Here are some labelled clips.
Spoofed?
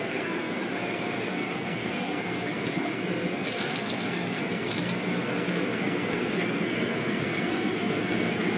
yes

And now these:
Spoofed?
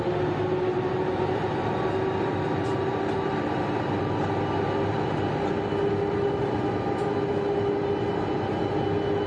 no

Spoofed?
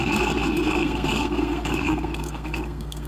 yes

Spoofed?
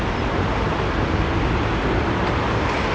no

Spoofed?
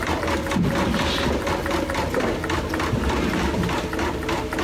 no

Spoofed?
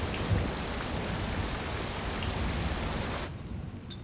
no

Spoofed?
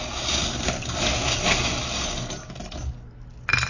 no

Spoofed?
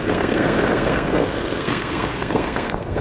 yes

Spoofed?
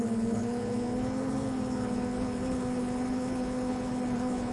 yes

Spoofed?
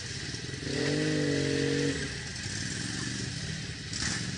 no